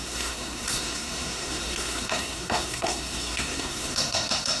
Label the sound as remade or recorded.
remade